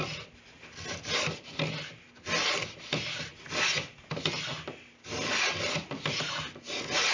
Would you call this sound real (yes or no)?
yes